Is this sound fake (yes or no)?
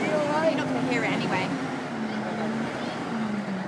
no